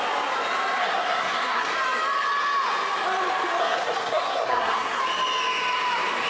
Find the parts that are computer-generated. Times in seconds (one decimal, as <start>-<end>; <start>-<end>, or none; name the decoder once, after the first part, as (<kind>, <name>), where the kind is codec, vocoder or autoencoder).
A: 0.8-1.7 (codec, SNAC); 3.6-5.0